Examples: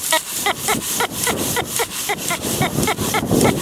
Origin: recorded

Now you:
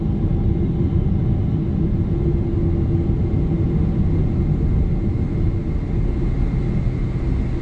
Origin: recorded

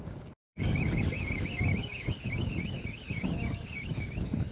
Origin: remade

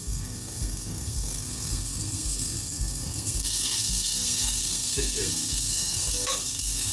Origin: remade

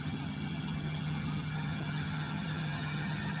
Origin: remade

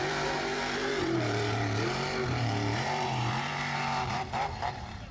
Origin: remade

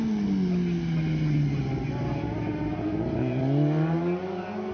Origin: recorded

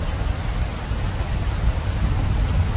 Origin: recorded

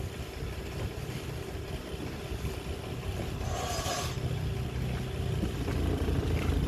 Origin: recorded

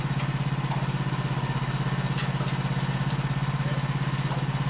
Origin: recorded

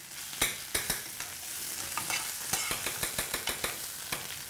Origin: recorded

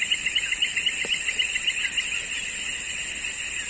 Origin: recorded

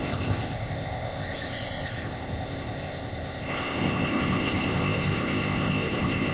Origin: remade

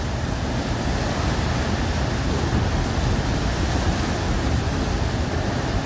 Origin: recorded